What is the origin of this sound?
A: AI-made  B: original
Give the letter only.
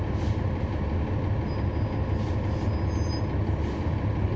B